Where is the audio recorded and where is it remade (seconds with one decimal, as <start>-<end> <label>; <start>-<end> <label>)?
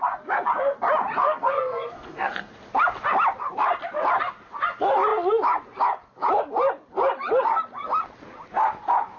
0.0-1.2 recorded; 1.2-2.5 remade; 2.5-9.2 recorded